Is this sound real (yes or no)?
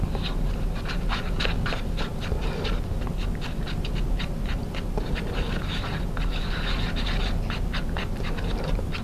yes